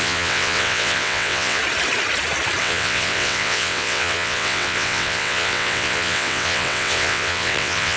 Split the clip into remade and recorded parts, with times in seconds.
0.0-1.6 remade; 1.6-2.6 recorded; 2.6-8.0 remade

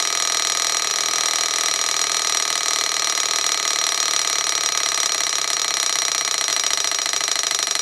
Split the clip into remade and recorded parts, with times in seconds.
0.0-0.9 recorded; 0.9-5.6 remade; 5.6-6.5 recorded; 6.5-7.8 remade

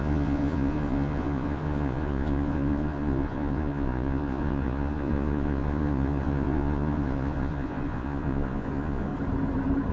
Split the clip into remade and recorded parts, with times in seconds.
0.0-9.1 remade; 9.1-9.9 recorded

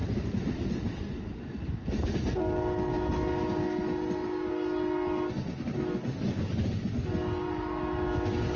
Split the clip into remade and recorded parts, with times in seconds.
0.0-8.6 recorded